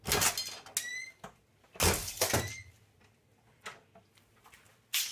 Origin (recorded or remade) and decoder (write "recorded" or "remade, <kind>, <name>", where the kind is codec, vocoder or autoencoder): recorded